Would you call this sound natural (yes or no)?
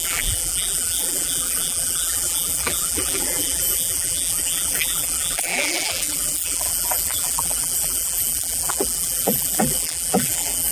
no